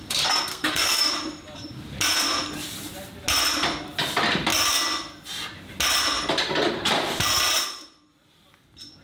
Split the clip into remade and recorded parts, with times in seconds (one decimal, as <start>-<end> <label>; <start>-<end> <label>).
0.0-0.5 recorded; 0.5-1.1 remade; 1.1-9.0 recorded